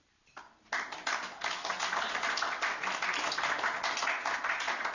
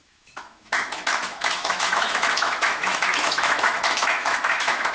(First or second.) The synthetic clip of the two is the second